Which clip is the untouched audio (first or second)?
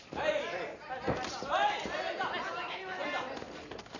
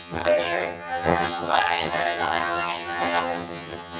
first